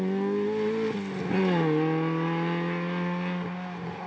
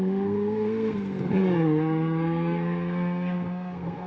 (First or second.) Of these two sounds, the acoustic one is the first